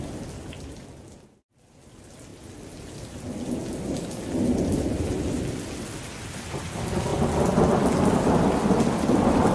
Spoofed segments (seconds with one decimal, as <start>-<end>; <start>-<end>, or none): none